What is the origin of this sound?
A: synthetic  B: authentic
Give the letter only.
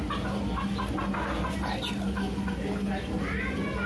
B